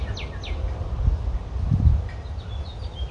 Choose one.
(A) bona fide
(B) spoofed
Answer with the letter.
A